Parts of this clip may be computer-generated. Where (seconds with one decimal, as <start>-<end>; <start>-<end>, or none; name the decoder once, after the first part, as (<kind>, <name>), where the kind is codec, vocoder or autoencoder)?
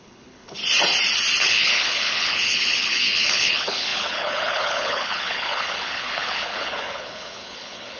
0.0-0.6 (codec, HILCodec); 1.4-8.0